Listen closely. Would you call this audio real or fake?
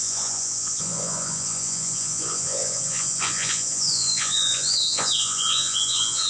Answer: fake